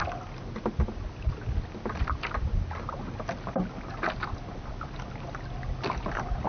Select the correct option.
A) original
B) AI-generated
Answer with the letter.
A